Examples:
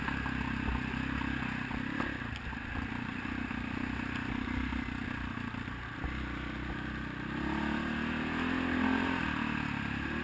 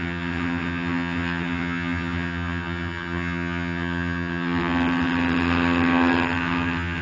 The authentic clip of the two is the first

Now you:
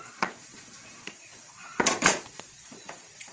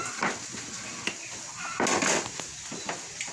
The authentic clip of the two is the second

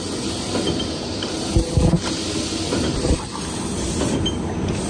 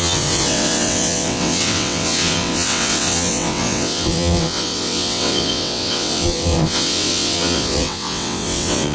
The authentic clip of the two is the first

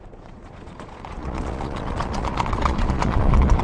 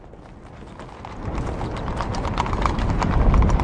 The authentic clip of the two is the second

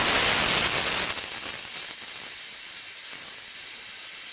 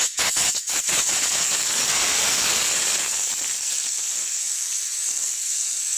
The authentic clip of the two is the first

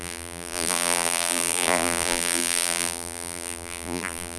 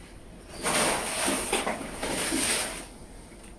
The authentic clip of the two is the second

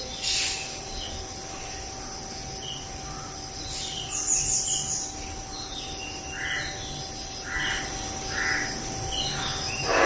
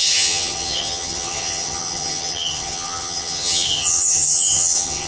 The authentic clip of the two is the first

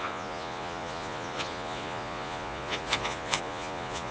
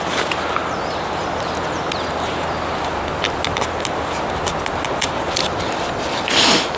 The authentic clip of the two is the second